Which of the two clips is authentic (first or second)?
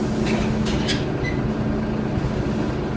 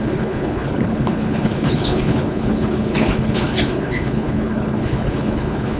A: first